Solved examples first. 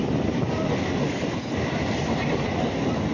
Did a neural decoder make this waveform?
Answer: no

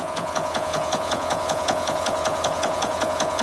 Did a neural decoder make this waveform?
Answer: yes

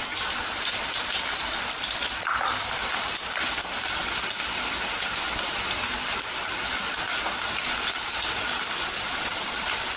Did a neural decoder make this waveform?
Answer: no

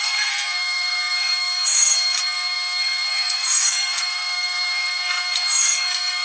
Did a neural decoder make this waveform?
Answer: yes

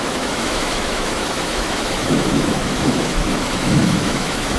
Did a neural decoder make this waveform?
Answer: yes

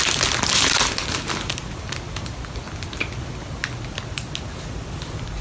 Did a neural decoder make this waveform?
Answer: no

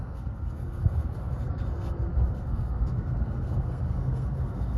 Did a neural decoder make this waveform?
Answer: yes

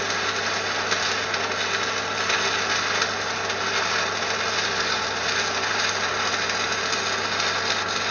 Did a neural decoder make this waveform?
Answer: no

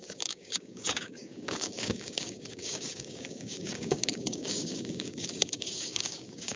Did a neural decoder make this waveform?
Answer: yes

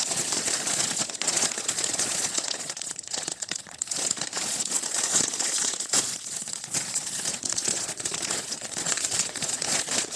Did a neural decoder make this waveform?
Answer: yes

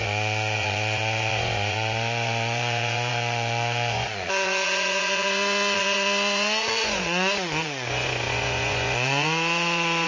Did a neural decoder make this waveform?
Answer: yes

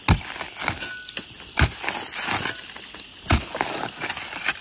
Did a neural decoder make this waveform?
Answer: no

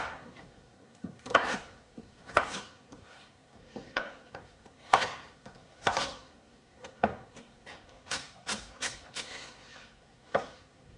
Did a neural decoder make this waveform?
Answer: yes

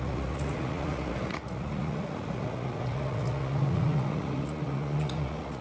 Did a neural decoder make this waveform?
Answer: yes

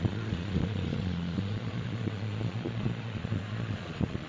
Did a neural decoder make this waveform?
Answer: yes